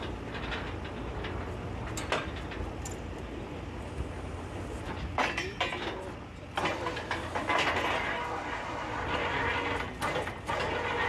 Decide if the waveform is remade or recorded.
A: recorded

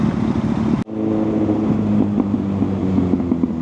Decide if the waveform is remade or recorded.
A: recorded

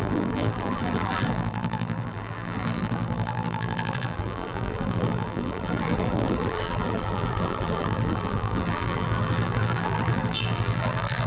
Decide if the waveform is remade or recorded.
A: remade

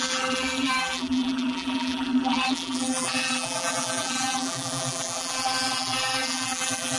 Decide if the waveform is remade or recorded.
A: remade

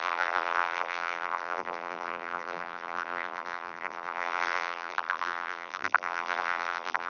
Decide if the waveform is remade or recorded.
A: remade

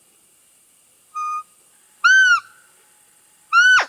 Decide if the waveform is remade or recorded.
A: recorded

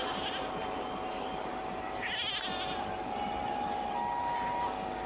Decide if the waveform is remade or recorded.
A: remade